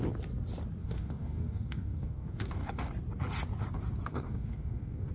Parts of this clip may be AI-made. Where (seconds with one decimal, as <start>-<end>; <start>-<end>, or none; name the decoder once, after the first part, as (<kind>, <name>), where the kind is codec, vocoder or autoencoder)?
0.8-2.9 (codec, DAC); 4.1-5.1